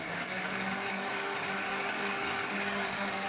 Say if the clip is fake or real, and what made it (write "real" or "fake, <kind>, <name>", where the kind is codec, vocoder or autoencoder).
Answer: fake, codec, DAC